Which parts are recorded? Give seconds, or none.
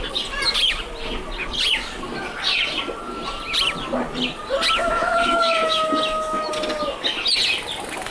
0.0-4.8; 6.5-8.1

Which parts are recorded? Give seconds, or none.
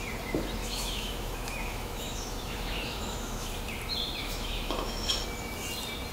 0.0-0.6; 3.5-4.2; 5.1-6.1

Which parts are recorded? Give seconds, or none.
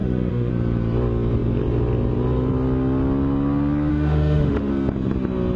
0.5-3.9; 4.7-5.6